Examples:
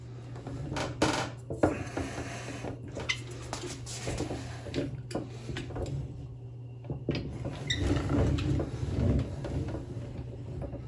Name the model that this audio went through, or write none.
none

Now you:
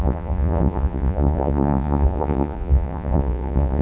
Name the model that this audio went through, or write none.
vocoder, Vocos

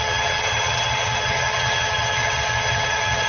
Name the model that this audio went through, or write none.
vocoder, HiFi-GAN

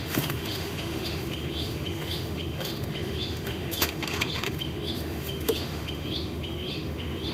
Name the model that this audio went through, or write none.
autoencoder, DAC-VAE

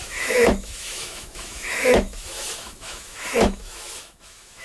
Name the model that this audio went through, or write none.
autoencoder, DAC-VAE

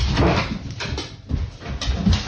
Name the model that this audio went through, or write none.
none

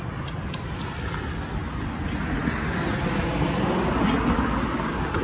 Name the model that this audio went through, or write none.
none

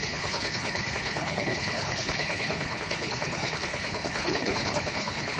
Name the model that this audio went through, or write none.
codec, HILCodec